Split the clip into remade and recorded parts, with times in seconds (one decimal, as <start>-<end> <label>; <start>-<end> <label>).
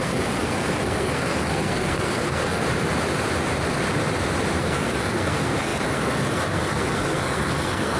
0.0-2.6 remade; 2.6-4.6 recorded; 4.6-8.0 remade